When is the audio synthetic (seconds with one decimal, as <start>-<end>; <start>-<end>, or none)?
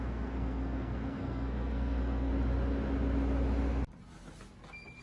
0.0-2.3